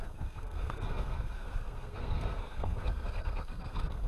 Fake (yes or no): yes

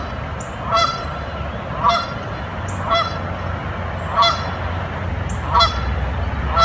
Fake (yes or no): no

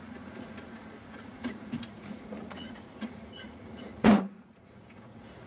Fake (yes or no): yes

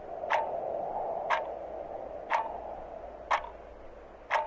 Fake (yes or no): no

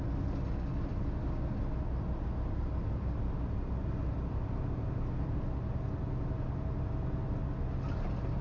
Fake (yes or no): no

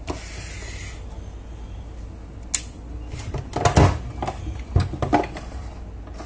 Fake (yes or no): no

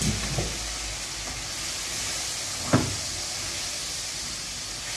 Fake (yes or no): no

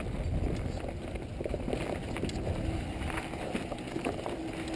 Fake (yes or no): no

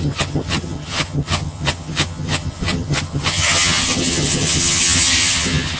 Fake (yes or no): yes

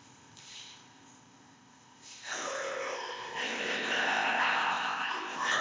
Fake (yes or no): yes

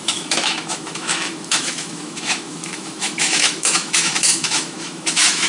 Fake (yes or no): yes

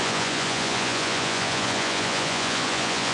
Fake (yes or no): yes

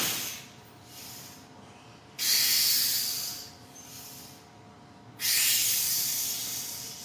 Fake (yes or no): no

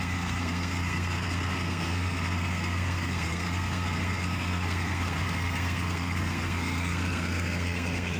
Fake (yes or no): yes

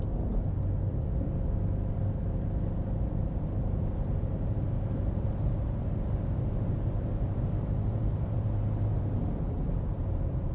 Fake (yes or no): yes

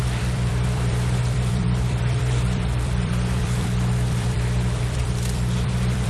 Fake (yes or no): yes